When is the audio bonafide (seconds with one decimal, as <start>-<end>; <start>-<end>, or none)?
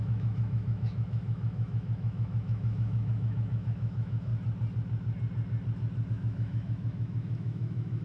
4.3-6.1